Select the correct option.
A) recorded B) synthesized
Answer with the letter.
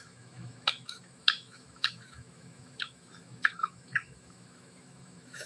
B